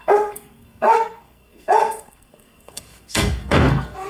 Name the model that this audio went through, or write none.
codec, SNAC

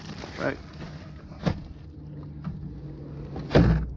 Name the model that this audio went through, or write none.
none